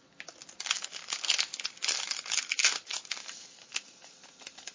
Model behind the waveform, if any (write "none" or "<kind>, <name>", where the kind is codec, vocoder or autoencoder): none